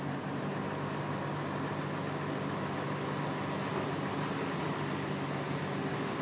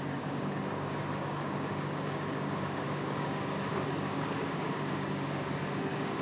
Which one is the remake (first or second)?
second